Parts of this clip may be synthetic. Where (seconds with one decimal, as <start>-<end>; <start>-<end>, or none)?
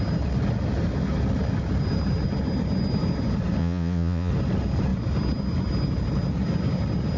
3.6-4.3